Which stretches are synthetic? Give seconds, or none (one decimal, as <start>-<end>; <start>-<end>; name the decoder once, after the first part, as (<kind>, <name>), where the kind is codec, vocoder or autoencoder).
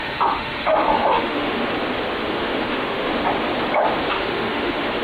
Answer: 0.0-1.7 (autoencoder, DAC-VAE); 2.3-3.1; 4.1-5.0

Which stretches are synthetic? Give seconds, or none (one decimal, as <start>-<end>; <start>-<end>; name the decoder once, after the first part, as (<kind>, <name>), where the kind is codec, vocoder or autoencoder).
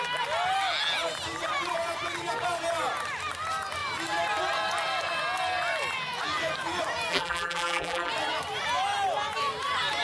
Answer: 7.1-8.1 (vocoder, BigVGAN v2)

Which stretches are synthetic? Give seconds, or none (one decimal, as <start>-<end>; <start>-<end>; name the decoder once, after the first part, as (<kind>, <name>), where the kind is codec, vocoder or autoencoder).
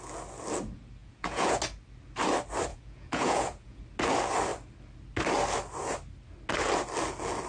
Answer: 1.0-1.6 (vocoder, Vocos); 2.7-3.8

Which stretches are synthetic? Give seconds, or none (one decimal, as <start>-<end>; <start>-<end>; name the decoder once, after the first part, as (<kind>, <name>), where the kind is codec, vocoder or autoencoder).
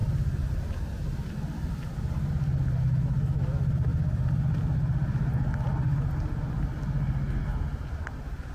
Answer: none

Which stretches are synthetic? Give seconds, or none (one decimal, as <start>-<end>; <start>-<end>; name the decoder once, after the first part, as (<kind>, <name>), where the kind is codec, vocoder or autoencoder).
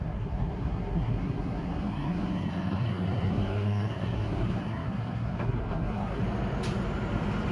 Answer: 0.0-6.2 (codec, SNAC)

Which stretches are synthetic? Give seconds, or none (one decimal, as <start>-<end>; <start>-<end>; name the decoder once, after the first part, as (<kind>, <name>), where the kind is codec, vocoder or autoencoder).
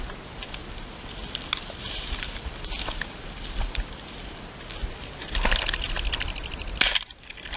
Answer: none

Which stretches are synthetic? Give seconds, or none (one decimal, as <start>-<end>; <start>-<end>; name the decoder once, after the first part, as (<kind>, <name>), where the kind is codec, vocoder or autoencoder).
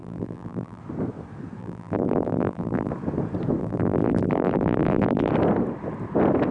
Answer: 0.0-0.8 (vocoder, BigVGAN v2); 1.6-2.9; 3.6-5.3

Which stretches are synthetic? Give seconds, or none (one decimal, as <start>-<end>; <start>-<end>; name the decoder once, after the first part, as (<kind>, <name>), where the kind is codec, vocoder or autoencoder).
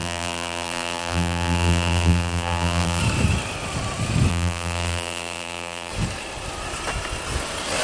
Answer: 0.0-3.0 (vocoder, BigVGAN v2); 4.3-5.9